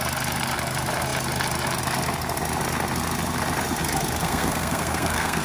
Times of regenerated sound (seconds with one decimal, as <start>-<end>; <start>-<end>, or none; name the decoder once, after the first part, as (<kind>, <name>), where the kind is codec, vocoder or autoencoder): 4.2-5.4 (codec, SNAC)